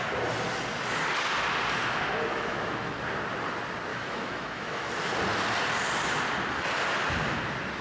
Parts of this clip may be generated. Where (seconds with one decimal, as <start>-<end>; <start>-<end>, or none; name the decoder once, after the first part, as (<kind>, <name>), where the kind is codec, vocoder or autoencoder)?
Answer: 2.3-3.0 (autoencoder, DAC-VAE); 3.9-5.0